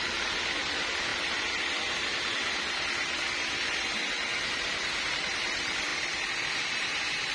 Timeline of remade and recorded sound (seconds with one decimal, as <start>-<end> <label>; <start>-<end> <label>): 0.0-7.3 recorded